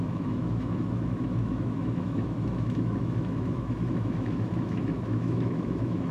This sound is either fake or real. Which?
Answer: fake